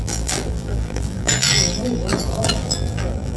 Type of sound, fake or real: fake